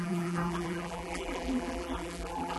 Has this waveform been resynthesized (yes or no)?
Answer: yes